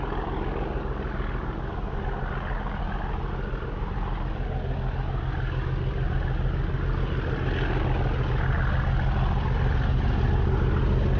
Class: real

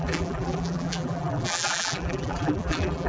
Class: fake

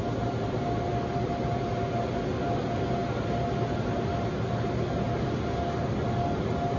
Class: real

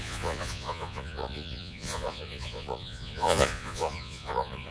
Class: fake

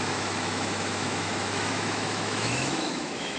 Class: fake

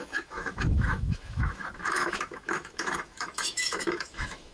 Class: fake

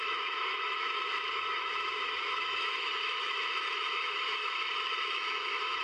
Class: fake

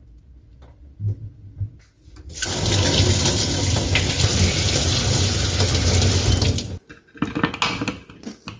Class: real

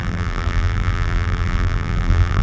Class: fake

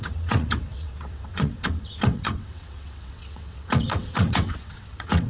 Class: fake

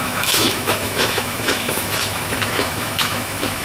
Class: fake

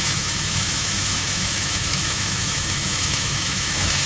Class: fake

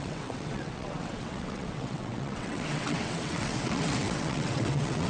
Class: fake